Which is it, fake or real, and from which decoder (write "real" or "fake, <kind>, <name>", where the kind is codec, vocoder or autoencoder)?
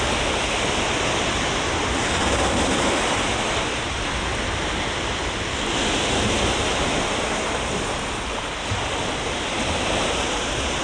real